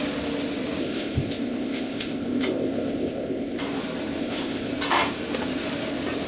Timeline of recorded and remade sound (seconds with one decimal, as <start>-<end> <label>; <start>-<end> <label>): 0.0-0.8 recorded; 0.8-3.6 remade; 3.6-4.2 recorded; 4.2-4.7 remade; 4.7-6.3 recorded